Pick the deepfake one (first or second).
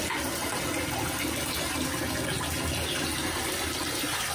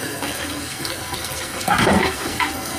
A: second